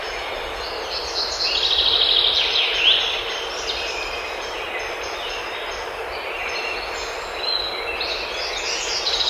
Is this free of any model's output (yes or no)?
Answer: yes